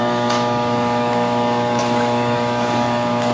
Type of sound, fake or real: fake